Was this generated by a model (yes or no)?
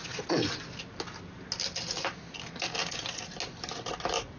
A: no